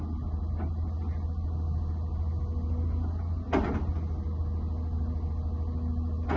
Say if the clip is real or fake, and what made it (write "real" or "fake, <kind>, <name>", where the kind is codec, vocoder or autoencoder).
real